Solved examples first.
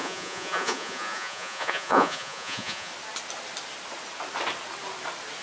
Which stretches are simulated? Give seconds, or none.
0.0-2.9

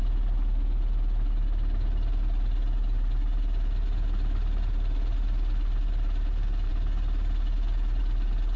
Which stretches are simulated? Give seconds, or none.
none

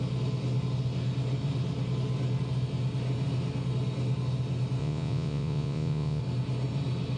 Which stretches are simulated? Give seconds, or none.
4.8-6.2

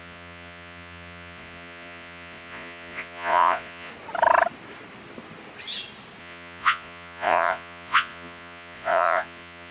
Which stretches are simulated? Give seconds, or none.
0.0-3.9; 6.2-9.7

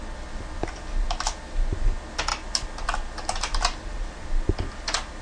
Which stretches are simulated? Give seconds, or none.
none

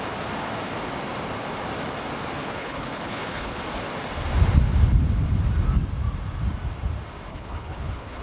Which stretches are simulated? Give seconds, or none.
2.4-3.6; 7.3-8.2

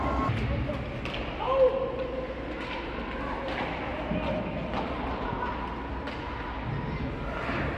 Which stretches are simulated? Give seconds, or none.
3.9-5.3